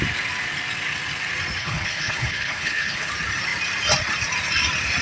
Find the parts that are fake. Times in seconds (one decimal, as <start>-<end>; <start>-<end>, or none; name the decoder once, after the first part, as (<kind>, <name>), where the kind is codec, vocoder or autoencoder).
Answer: 1.6-3.1 (codec, HILCodec)